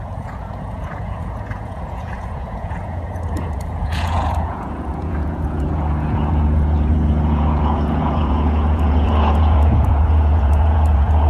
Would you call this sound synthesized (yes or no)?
yes